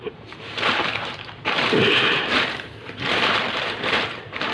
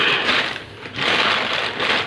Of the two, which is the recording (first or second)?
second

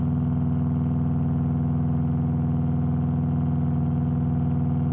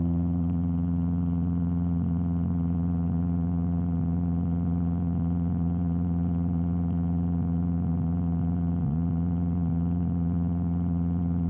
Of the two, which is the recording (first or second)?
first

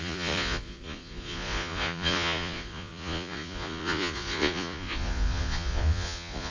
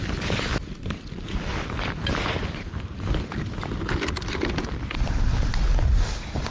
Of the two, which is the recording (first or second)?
second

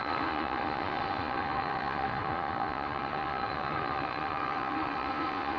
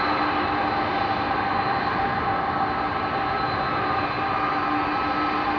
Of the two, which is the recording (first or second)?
second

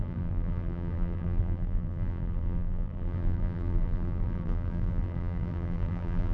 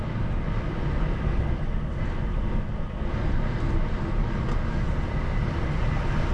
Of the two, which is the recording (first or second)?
second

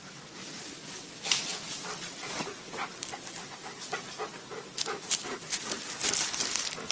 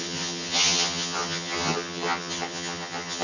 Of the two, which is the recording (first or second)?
first